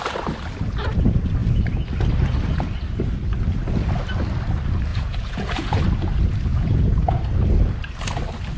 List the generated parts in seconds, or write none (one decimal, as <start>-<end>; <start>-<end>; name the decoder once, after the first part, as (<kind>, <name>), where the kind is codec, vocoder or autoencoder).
4.9-5.8 (vocoder, Vocos); 6.5-7.2

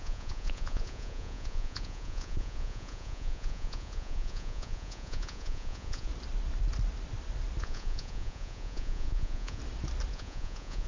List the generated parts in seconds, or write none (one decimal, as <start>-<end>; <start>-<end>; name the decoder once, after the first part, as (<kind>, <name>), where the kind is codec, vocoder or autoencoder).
0.0-6.1 (vocoder, Vocos); 7.6-9.6; 10.1-10.9

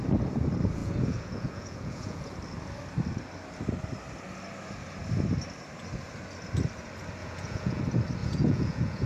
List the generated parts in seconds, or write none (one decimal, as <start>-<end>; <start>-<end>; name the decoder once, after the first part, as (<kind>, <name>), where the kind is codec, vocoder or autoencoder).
0.8-2.3 (vocoder, Vocos); 7.2-7.8; 8.2-9.1

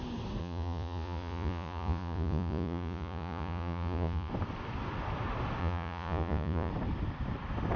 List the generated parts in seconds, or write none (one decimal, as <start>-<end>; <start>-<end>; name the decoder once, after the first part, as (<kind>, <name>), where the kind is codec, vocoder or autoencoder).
0.4-4.3 (vocoder, Vocos); 5.6-6.7

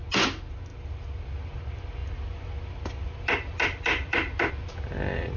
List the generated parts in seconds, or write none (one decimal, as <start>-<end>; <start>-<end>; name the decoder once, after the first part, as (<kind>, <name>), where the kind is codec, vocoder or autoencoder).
none

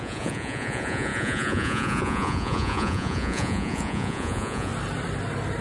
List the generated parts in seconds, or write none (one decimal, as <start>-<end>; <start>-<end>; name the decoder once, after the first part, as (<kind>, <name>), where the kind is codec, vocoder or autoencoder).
0.0-4.7 (vocoder, Vocos)

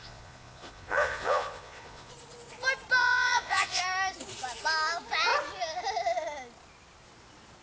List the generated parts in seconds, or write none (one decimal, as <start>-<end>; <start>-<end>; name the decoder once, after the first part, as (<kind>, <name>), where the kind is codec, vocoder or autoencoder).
0.0-2.1 (vocoder, Vocos); 3.0-3.8